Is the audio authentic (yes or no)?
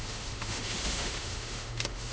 no